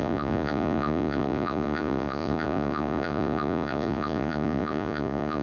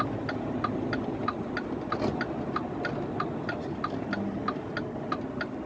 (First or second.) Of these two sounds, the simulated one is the first